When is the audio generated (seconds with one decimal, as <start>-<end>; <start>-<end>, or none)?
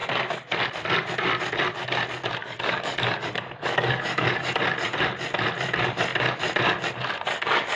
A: 2.4-4.6